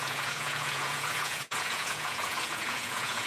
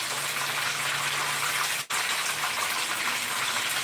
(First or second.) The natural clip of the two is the second